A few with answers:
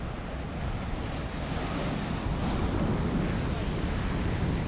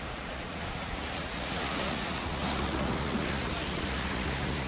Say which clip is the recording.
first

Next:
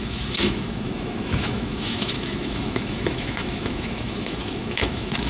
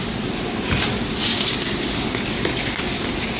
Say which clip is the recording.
second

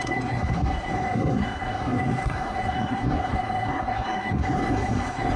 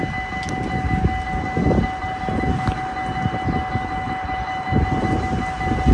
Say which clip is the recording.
second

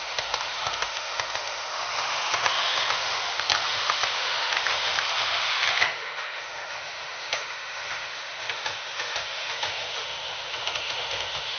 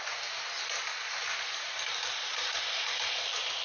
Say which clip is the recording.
second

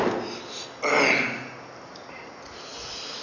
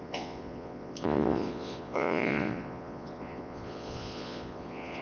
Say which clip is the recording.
first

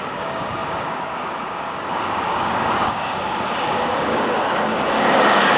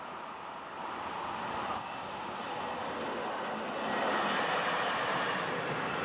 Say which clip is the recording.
second